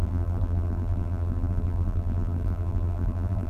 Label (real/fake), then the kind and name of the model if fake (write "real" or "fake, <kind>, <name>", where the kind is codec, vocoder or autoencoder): fake, vocoder, BigVGAN v2